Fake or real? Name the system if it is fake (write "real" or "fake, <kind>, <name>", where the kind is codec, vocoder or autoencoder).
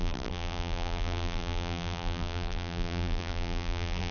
fake, vocoder, BigVGAN v2